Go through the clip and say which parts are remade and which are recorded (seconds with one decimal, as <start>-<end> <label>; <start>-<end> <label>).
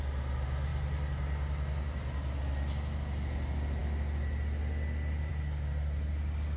0.0-6.6 recorded